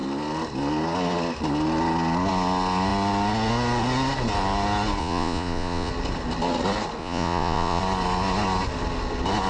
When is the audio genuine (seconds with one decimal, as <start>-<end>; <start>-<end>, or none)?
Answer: 0.0-5.0; 5.9-7.0; 7.8-9.5